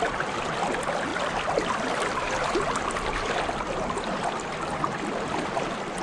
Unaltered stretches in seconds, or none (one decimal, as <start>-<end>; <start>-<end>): 0.0-6.0